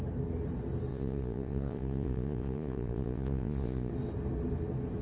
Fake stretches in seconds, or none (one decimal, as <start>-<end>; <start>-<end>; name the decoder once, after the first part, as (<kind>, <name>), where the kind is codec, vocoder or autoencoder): 0.9-3.9 (vocoder, Vocos)